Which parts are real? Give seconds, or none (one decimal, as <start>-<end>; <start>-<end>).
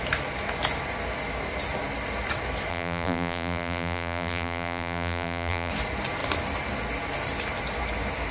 0.0-2.7; 5.7-8.3